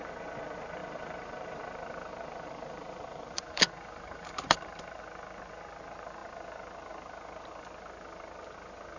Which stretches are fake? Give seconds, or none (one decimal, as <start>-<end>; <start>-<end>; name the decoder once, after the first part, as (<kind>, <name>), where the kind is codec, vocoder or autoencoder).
0.8-5.0 (vocoder, BigVGAN v2)